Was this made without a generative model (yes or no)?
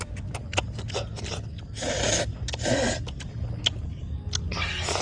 yes